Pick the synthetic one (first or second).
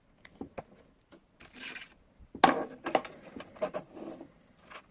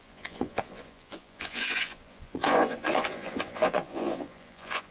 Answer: second